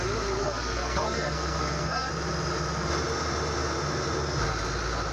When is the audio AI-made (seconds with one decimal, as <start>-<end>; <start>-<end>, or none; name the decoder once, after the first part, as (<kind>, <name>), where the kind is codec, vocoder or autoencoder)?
0.4-2.1 (codec, SNAC)